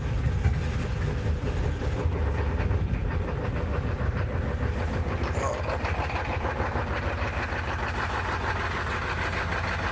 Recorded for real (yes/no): yes